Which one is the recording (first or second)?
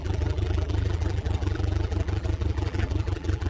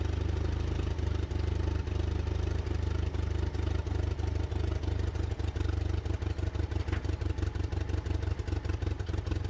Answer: second